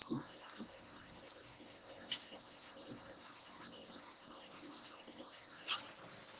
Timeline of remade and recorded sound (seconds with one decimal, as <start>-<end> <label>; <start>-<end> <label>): 0.0-5.7 remade; 5.7-6.4 recorded